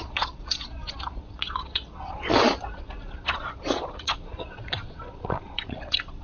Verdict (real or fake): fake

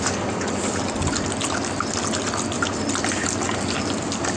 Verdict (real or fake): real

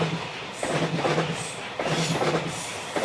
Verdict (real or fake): real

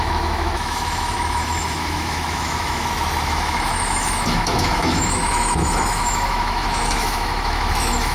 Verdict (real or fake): fake